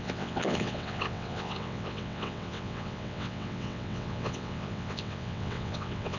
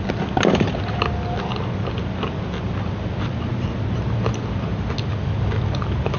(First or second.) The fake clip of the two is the first